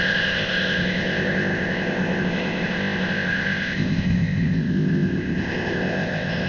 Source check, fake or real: fake